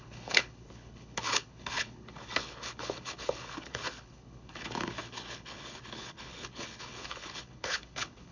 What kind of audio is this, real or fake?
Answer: fake